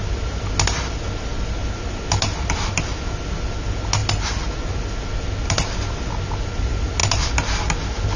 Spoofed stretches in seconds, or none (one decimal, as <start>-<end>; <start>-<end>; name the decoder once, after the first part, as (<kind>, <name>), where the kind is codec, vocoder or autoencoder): none